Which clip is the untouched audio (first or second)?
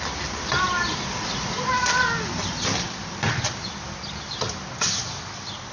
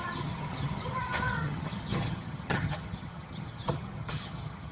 first